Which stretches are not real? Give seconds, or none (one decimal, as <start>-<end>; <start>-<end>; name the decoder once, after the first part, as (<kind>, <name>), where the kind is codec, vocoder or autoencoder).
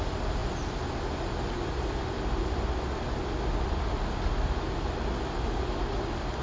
none